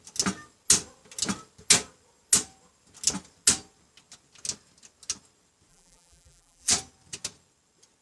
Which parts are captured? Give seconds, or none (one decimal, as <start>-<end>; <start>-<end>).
0.0-5.7; 6.7-8.0